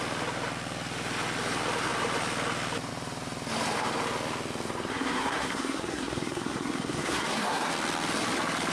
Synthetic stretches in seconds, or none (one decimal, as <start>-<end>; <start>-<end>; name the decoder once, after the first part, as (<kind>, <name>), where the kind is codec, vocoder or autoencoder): 4.9-7.7 (codec, SNAC)